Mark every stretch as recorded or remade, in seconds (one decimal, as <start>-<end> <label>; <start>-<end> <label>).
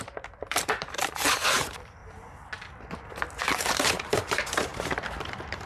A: 0.0-2.0 remade; 2.0-3.4 recorded; 3.4-5.7 remade